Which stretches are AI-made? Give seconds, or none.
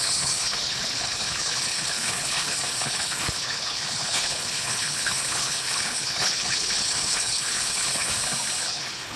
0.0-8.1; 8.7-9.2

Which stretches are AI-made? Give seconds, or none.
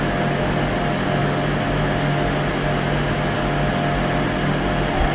none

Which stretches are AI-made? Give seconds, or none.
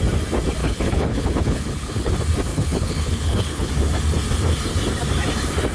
0.6-2.1; 2.5-3.7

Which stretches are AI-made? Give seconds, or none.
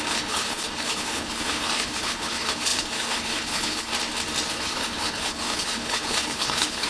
0.0-3.9; 4.5-6.9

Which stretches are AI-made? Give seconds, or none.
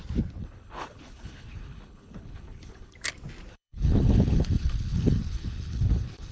0.4-2.9; 3.5-6.3